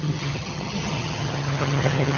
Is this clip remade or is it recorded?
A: remade